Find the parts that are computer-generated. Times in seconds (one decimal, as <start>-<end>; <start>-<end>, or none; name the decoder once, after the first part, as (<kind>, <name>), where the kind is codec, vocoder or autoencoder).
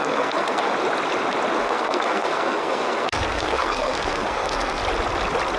0.0-0.7 (codec, SNAC); 1.6-4.8